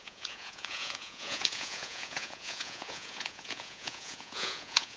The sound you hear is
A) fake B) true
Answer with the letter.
A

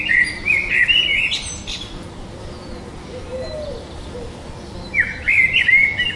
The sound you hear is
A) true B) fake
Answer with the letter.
A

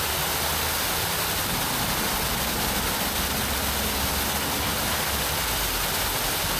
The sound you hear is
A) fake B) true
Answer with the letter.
B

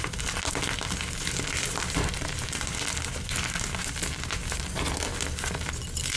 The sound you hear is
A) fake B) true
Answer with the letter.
B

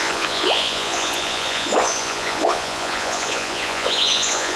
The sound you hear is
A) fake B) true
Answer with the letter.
A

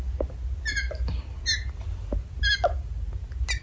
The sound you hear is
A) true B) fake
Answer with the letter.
A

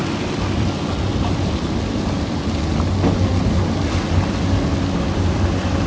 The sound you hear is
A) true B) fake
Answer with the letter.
A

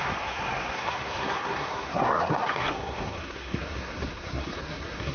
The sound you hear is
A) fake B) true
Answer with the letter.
A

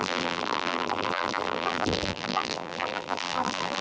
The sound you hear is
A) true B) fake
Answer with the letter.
B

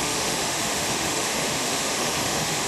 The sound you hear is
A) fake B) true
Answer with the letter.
A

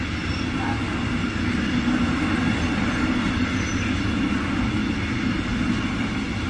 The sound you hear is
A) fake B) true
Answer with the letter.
B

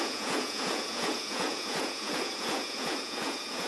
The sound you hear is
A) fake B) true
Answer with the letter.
A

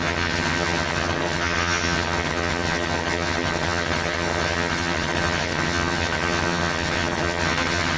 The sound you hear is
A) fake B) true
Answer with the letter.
A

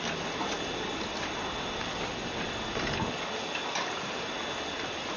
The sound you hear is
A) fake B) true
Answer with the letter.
B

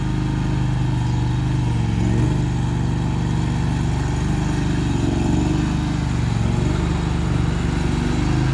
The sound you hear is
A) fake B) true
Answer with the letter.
B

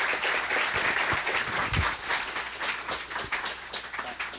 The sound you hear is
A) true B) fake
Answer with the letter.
A